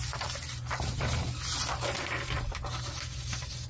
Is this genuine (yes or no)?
yes